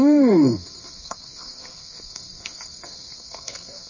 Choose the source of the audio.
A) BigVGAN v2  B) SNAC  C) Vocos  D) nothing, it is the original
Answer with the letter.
B